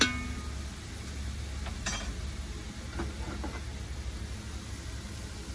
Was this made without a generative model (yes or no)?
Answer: yes